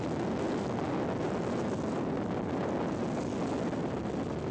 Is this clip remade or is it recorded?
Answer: recorded